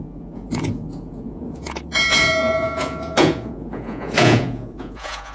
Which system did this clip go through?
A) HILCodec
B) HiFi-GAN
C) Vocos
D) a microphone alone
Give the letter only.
C